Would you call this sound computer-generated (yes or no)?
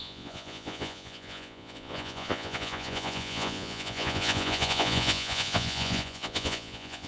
yes